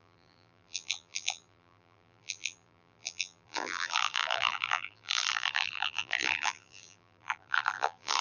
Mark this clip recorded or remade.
remade